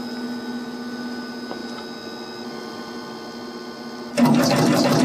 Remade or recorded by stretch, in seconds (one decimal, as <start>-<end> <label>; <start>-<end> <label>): 0.0-5.0 recorded